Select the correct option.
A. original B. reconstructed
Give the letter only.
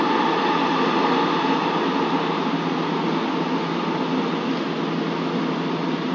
A